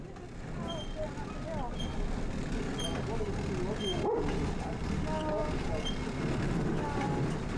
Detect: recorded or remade recorded